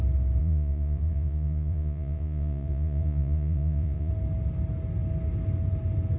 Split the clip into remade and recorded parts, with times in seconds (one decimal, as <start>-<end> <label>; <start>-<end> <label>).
0.0-0.4 recorded; 0.4-4.1 remade; 4.1-6.2 recorded